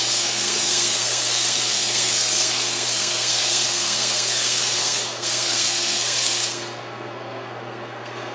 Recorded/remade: remade